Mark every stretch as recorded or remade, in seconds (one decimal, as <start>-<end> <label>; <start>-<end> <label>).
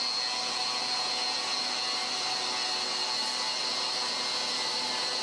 0.0-5.2 recorded